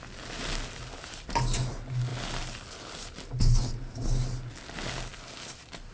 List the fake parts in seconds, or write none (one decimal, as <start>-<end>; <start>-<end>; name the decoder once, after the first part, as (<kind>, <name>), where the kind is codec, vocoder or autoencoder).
none